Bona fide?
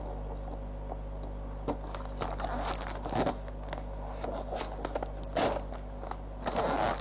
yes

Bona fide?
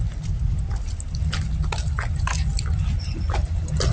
yes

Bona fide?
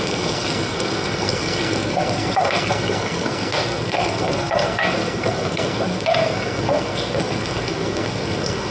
no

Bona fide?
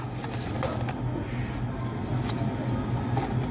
yes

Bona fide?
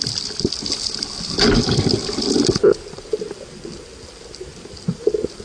yes